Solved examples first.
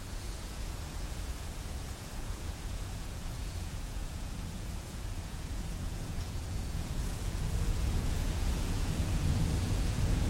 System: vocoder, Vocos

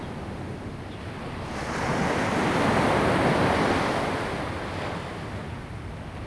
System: none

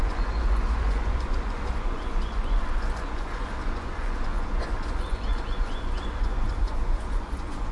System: vocoder, Vocos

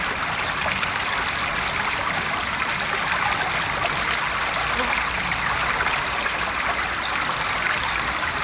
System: none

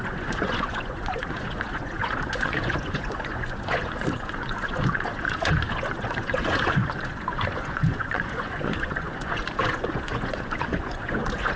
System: vocoder, Vocos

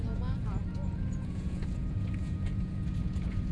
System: vocoder, Vocos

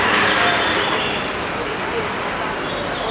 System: none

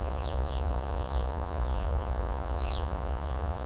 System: vocoder, Vocos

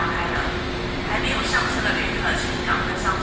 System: none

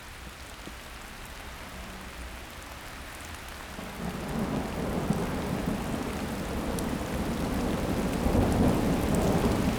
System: none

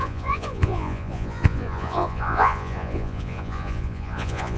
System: vocoder, Vocos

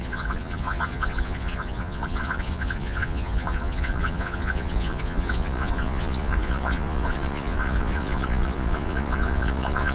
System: vocoder, Vocos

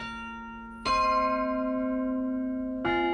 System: none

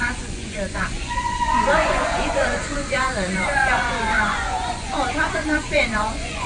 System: vocoder, Vocos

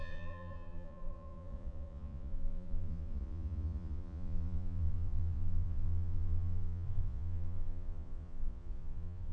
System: vocoder, Vocos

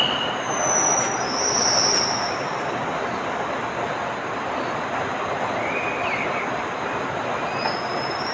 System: none